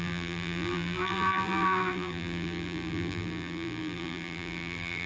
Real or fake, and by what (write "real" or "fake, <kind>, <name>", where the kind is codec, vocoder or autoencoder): fake, vocoder, BigVGAN v2